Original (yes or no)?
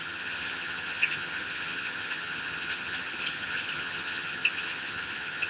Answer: no